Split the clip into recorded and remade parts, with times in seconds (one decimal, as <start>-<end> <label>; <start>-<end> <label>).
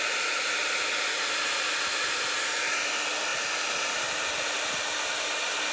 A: 0.0-5.7 recorded